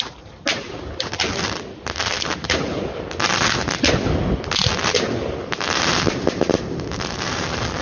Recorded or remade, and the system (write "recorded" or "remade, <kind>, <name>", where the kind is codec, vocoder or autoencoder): recorded